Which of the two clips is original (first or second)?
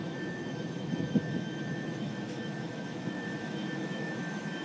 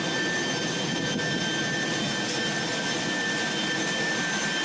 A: second